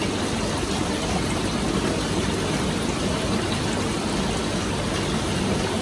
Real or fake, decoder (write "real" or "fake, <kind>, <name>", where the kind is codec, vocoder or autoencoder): real